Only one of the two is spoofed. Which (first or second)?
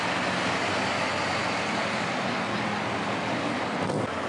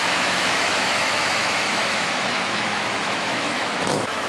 second